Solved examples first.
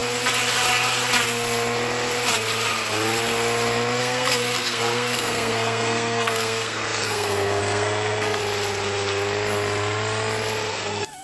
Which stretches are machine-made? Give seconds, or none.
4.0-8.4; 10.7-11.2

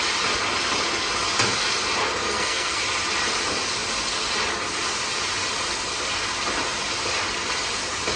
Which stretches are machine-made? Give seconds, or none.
2.0-2.8

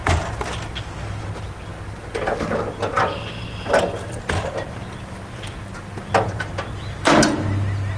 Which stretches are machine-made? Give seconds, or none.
none

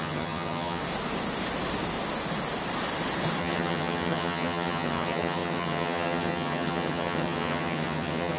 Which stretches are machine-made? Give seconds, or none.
0.0-0.8; 3.4-8.4